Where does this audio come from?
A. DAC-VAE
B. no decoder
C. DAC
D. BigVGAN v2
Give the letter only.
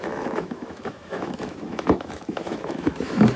A